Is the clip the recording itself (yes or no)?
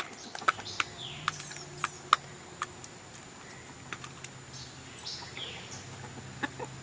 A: yes